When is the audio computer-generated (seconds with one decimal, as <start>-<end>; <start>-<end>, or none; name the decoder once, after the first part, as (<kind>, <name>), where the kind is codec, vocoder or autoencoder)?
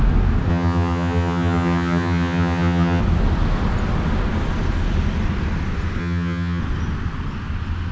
0.5-3.0 (vocoder, HiFi-GAN); 6.0-6.6